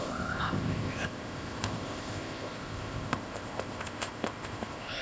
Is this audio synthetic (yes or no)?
yes